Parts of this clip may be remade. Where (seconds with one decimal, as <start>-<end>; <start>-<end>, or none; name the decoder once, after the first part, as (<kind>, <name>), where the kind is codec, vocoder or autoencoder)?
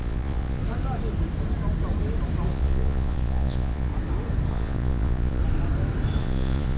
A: 0.0-0.6 (vocoder, Vocos); 2.5-3.9; 4.5-5.4; 6.2-6.8